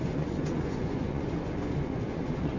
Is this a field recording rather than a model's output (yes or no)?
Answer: no